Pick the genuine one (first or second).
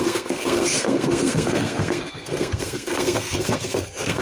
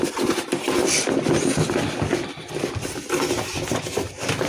second